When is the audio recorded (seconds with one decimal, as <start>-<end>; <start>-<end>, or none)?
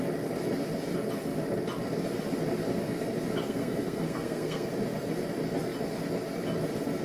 0.0-3.4; 4.7-7.0